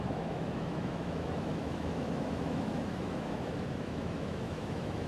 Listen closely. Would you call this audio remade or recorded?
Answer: remade